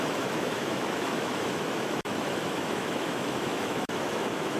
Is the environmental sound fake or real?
fake